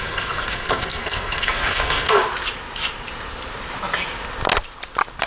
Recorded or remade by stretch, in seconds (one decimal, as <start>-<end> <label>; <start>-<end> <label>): 0.0-2.2 remade; 2.2-5.3 recorded